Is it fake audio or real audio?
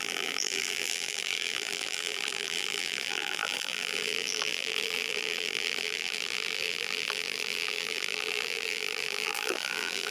fake